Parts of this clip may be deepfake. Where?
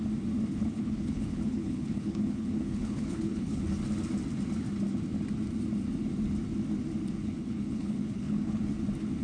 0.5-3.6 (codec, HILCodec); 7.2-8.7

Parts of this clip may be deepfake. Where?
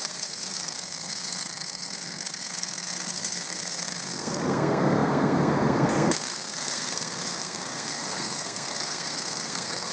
0.0-9.9 (codec, SNAC)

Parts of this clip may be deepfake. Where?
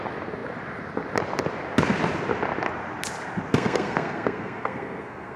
3.5-5.4 (codec, SNAC)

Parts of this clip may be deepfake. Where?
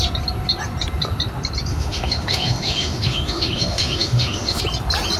1.7-4.6 (autoencoder, DAC-VAE)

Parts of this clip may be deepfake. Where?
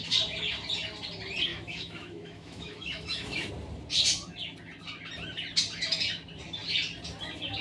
1.5-3.5 (autoencoder, DAC-VAE)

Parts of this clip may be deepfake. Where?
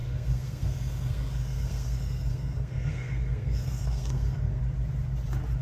0.0-4.6 (codec, SNAC)